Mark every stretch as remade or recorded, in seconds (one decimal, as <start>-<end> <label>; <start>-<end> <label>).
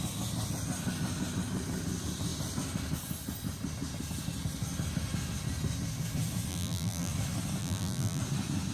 0.0-6.5 recorded; 6.5-7.1 remade; 7.1-7.6 recorded; 7.6-8.2 remade; 8.2-8.7 recorded